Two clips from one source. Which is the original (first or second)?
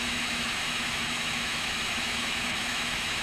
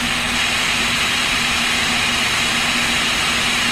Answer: second